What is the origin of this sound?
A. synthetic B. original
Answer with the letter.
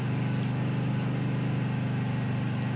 B